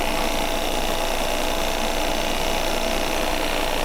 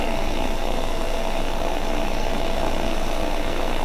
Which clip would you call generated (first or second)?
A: second